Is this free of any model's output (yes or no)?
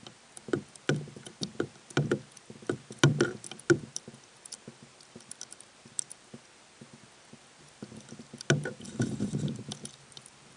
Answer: yes